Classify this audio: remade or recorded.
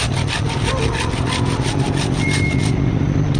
recorded